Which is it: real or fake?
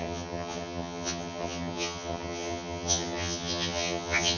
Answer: fake